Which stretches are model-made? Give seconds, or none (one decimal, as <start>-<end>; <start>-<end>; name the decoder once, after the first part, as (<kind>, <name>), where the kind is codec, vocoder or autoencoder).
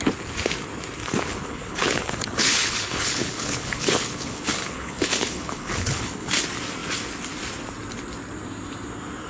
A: 1.3-6.3 (codec, HILCodec)